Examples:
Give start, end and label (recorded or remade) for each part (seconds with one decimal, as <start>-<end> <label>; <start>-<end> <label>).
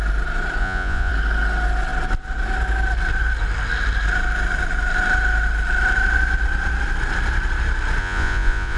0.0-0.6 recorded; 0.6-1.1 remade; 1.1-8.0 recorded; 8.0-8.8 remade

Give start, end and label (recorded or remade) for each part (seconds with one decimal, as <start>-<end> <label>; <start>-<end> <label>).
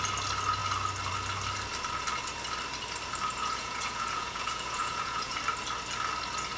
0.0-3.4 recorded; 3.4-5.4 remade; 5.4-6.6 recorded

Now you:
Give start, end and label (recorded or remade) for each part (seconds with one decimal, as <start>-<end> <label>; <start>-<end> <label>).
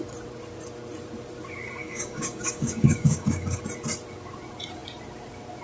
0.0-1.8 recorded; 1.8-3.6 remade; 3.6-5.6 recorded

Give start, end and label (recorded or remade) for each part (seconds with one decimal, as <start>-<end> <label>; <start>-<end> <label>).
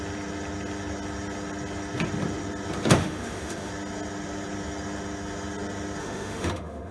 0.0-3.0 recorded; 3.0-3.7 remade; 3.7-6.0 recorded; 6.0-6.9 remade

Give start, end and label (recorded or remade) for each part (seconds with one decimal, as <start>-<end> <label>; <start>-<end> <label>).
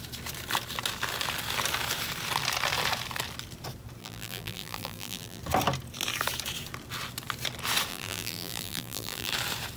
0.0-4.0 recorded; 4.0-5.4 remade; 5.4-7.9 recorded; 7.9-9.3 remade; 9.3-9.8 recorded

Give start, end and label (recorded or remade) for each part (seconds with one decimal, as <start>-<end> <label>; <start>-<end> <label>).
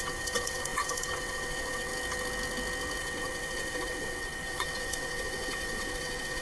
0.0-1.9 remade; 1.9-3.0 recorded; 3.0-6.4 remade